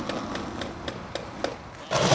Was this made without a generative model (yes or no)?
yes